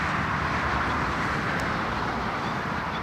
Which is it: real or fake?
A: fake